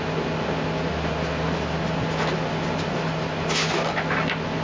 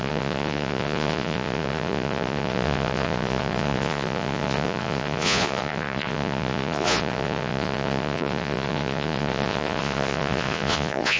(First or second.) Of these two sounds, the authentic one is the first